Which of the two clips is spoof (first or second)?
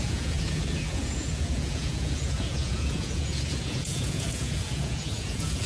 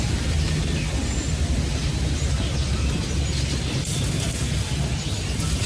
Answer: first